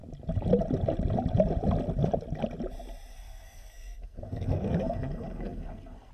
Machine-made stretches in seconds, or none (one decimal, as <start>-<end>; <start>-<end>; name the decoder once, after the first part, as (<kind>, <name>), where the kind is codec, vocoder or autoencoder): 3.1-6.1 (codec, SNAC)